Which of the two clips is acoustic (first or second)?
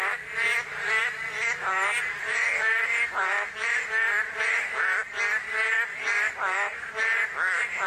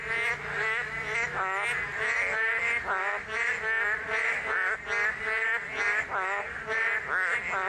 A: second